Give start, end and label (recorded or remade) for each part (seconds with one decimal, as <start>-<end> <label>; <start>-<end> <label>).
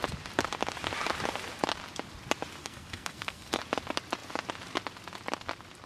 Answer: 0.0-2.6 recorded; 2.6-3.6 remade; 3.6-5.9 recorded